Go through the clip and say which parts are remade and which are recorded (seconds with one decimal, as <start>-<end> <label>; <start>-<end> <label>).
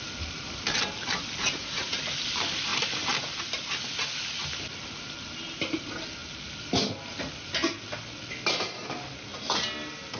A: 0.0-1.4 recorded; 1.4-2.0 remade; 2.0-10.2 recorded